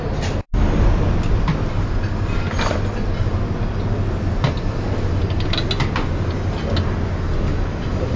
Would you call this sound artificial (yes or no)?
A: no